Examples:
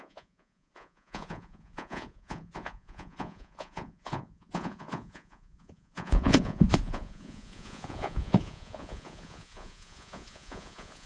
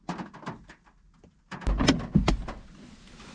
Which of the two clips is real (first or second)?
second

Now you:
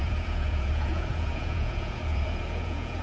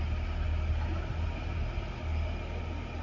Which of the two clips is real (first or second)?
second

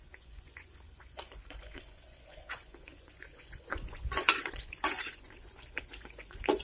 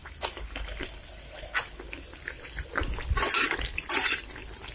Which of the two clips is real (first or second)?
second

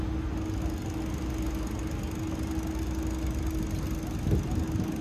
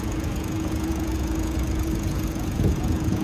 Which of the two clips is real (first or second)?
first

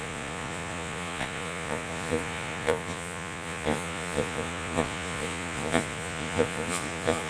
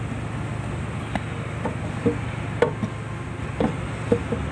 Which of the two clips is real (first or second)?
second